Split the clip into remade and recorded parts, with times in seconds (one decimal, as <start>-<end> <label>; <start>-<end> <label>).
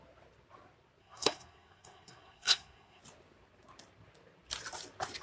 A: 0.0-1.0 recorded; 1.0-3.0 remade; 3.0-5.2 recorded